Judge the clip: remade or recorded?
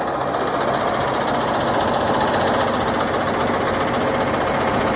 recorded